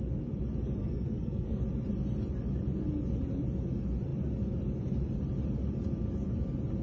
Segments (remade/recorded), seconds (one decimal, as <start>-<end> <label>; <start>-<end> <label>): 0.0-0.8 recorded; 0.8-1.6 remade; 1.6-6.8 recorded